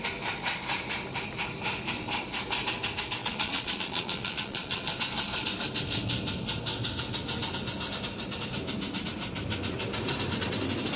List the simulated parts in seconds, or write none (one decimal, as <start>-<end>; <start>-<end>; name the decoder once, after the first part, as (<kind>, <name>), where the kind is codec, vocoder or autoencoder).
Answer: 3.2-4.9 (vocoder, Vocos)